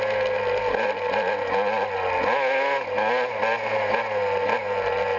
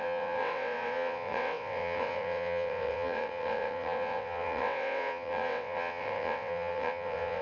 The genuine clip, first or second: first